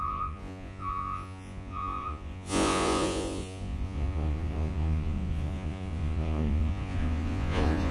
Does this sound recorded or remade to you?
remade